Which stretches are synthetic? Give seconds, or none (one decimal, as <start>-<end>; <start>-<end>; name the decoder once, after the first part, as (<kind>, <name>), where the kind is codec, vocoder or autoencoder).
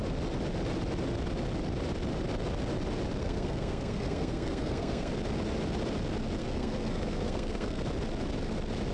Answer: 3.2-5.1 (codec, SNAC); 6.4-7.8